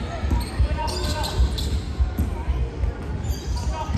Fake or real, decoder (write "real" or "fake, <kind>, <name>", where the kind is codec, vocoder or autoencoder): real